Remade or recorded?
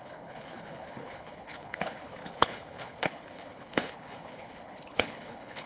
remade